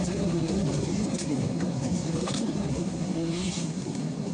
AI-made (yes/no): yes